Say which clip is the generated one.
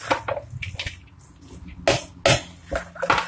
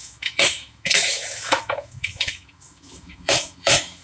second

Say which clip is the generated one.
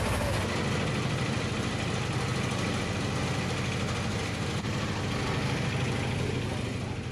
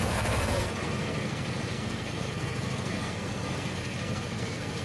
second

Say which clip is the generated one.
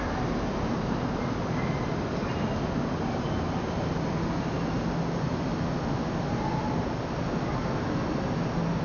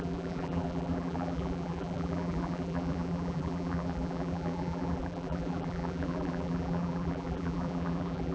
second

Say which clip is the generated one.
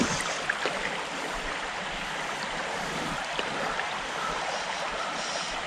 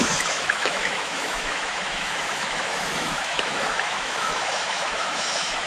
second